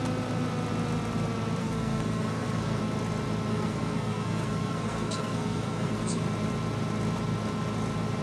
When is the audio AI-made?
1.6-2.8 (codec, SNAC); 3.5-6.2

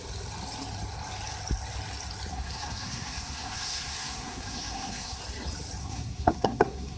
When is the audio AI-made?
2.3-5.2 (codec, SNAC); 5.8-7.0

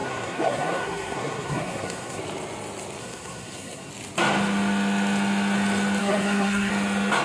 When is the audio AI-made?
0.0-2.2 (codec, SNAC); 3.0-3.9; 6.0-6.7

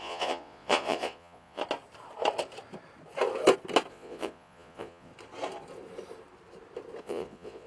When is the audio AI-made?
0.0-1.6 (vocoder, Vocos); 3.9-5.1; 7.0-7.7